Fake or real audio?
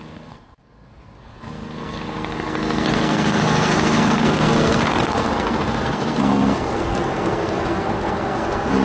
fake